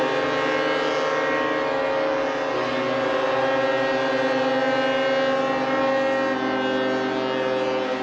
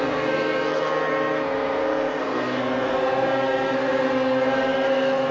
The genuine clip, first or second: first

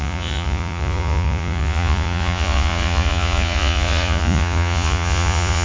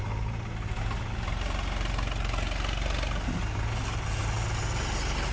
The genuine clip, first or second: second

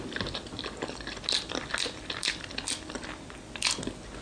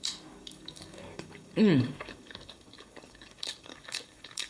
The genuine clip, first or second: first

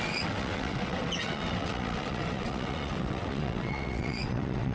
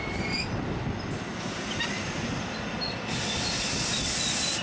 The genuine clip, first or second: second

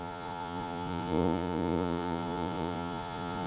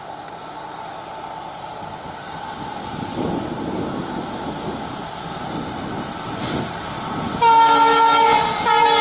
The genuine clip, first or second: second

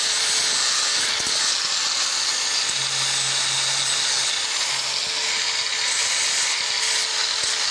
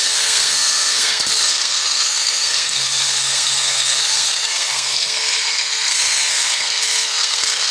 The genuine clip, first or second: first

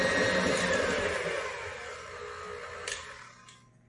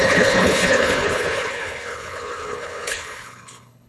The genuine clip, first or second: first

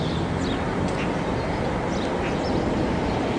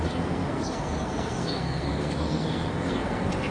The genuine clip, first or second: first